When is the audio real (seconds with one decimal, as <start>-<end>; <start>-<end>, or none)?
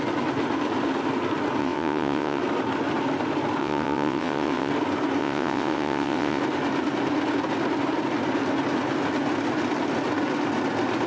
0.0-1.6; 2.4-3.6; 4.7-5.2; 6.4-11.1